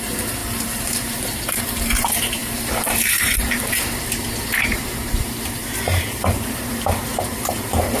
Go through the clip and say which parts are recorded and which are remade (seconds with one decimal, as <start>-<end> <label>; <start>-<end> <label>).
0.0-8.0 remade